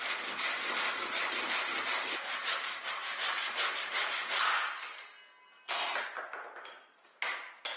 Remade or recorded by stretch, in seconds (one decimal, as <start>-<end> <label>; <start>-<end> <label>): 0.0-7.8 recorded